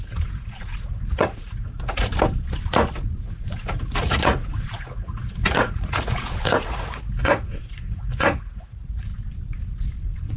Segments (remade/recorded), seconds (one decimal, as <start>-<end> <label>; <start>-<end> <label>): 0.0-2.1 remade; 2.1-3.2 recorded; 3.2-9.1 remade; 9.1-10.0 recorded; 10.0-10.4 remade